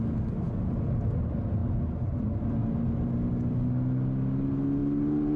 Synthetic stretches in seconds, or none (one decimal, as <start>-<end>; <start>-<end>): 1.6-2.5